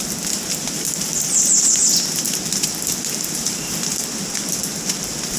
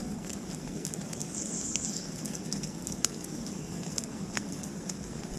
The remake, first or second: second